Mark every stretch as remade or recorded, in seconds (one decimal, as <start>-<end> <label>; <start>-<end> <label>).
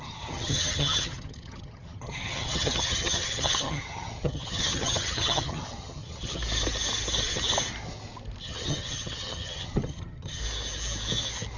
0.0-6.4 remade; 6.4-8.4 recorded; 8.4-10.4 remade; 10.4-11.6 recorded